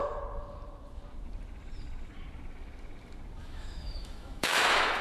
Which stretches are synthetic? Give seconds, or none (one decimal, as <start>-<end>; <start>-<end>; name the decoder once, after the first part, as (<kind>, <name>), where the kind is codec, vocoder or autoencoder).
3.4-5.0 (autoencoder, DAC-VAE)